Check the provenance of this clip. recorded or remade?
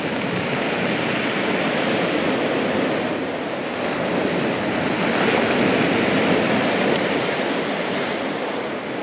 recorded